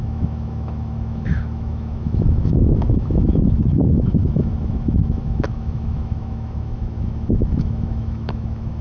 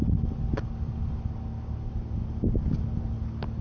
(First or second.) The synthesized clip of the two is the first